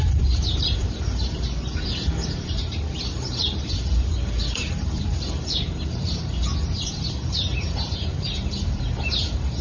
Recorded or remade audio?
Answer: remade